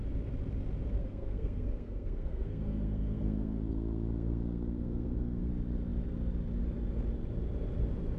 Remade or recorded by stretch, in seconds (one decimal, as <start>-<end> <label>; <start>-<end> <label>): 0.0-1.0 recorded; 1.0-5.5 remade; 5.5-8.2 recorded